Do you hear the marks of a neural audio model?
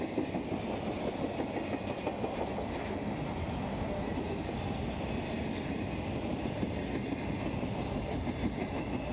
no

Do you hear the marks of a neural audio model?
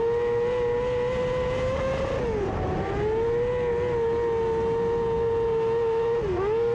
no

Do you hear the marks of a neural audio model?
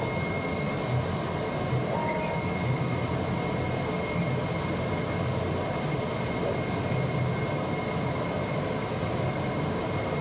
no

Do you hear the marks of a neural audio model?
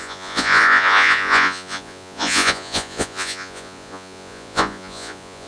yes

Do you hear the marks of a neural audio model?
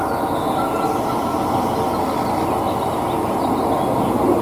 no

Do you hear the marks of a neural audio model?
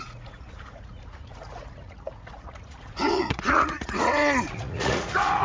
yes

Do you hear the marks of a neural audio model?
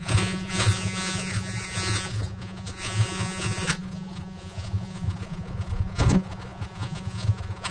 yes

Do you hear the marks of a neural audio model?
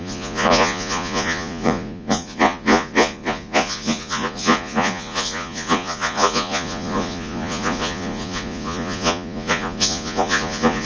yes